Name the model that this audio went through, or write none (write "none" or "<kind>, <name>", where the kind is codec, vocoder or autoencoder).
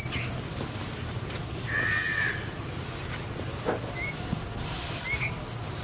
none